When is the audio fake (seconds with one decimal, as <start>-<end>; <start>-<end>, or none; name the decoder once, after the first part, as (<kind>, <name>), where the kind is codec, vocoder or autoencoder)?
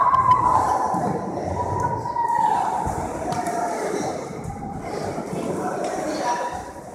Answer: 0.0-6.9 (vocoder, BigVGAN v2)